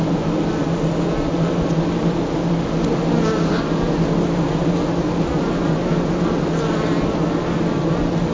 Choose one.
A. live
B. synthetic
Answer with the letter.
A